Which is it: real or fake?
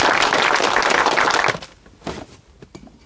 real